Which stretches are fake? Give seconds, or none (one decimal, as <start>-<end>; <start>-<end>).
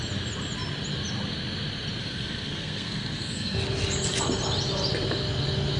2.0-3.6